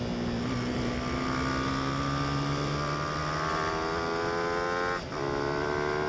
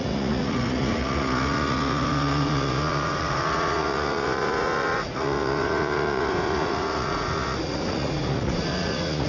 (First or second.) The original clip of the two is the first